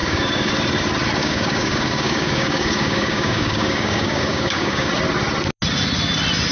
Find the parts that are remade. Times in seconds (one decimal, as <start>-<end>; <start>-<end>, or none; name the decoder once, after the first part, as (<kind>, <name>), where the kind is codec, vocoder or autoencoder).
0.0-0.5 (codec, DAC); 1.2-4.9